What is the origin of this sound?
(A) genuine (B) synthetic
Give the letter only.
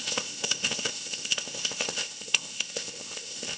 B